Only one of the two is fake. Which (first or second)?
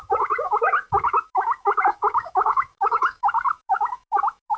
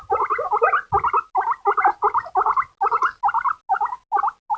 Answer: first